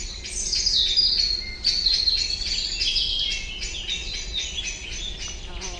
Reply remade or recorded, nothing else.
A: recorded